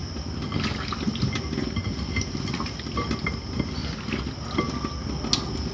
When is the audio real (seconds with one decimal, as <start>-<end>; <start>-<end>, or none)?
0.0-5.7